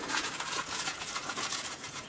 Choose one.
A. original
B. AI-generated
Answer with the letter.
B